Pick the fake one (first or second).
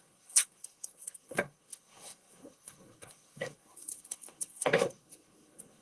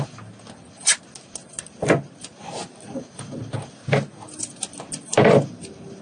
first